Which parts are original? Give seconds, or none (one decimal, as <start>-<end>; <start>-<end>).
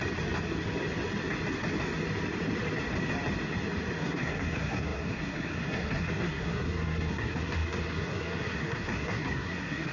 0.0-4.0